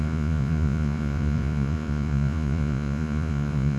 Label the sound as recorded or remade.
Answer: remade